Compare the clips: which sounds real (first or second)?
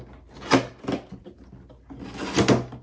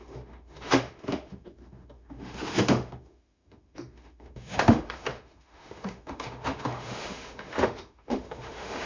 first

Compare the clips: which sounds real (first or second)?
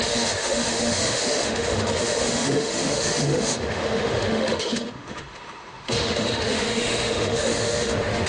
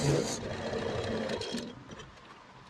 second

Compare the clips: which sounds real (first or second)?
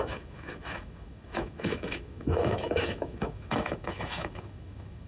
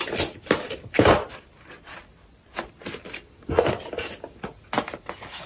second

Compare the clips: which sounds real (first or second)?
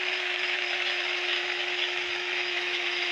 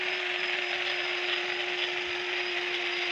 second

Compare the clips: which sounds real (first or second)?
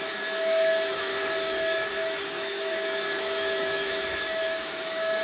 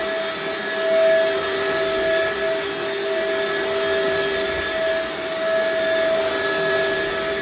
second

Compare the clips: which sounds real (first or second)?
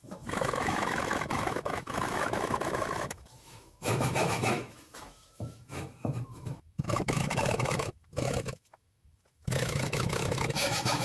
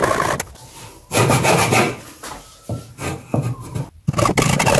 second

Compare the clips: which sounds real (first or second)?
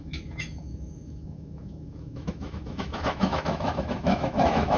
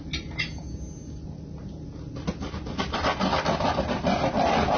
second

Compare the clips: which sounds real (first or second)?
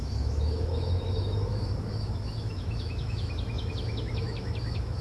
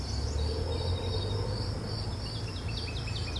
second